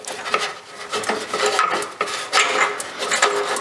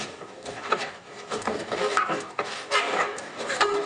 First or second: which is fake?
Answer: second